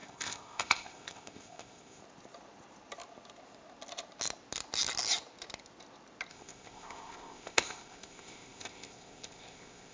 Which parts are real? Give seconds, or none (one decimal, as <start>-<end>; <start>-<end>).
2.0-6.3